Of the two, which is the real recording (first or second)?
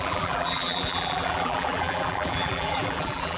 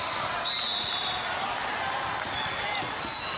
second